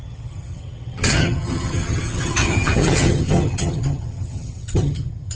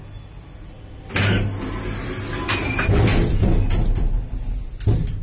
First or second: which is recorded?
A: second